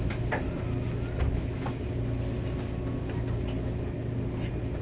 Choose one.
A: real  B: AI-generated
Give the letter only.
A